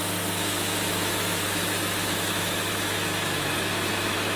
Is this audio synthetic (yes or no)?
yes